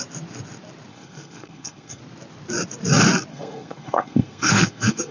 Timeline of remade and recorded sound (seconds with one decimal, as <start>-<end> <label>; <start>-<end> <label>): 0.0-0.9 recorded; 0.9-2.0 remade; 2.0-3.3 recorded; 3.3-5.1 remade